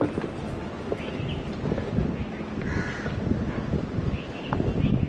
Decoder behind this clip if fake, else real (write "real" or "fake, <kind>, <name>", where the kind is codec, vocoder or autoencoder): real